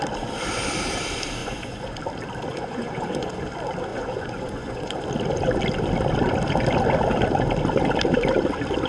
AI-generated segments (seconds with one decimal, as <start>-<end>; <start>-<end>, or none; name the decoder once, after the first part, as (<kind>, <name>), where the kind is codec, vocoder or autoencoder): 1.4-2.0 (vocoder, Vocos); 2.5-3.4; 3.9-4.9